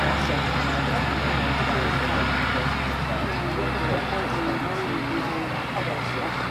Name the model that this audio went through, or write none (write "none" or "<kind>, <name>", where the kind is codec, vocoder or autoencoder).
none